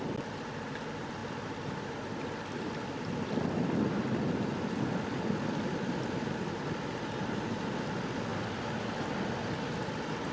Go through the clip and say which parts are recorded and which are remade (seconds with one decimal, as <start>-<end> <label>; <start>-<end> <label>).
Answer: 0.0-1.2 recorded; 1.2-2.7 remade; 2.7-8.3 recorded; 8.3-10.3 remade

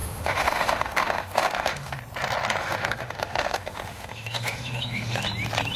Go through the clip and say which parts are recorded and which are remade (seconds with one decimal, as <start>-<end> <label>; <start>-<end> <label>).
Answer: 0.0-2.0 remade; 2.0-2.6 recorded; 2.6-5.2 remade; 5.2-5.8 recorded

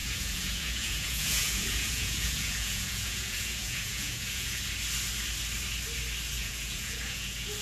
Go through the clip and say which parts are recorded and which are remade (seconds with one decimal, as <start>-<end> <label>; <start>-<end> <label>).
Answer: 0.0-4.6 remade; 4.6-6.4 recorded; 6.4-7.6 remade

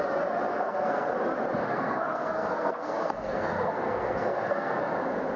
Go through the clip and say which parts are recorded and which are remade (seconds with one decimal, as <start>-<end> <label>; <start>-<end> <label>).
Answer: 0.0-0.5 recorded; 0.5-1.1 remade; 1.1-1.6 recorded; 1.6-4.8 remade; 4.8-5.4 recorded

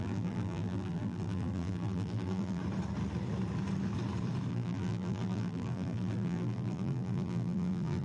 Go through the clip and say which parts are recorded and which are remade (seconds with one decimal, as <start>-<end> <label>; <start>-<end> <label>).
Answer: 0.0-2.6 remade; 2.6-4.5 recorded; 4.5-8.0 remade

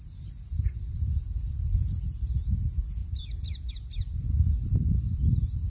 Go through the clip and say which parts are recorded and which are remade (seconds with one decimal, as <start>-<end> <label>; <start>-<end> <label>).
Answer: 0.0-5.7 recorded

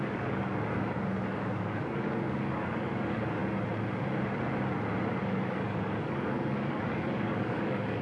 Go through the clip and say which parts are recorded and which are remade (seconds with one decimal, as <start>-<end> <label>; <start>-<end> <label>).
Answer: 0.0-3.4 remade; 3.4-5.2 recorded; 5.2-8.0 remade

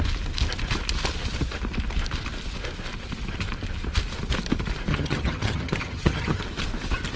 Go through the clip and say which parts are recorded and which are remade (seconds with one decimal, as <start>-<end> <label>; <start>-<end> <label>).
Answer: 0.0-4.9 recorded; 4.9-6.4 remade; 6.4-7.2 recorded